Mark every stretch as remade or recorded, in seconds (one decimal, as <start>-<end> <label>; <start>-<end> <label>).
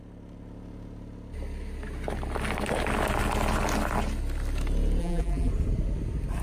0.0-5.0 recorded; 5.0-5.5 remade; 5.5-6.4 recorded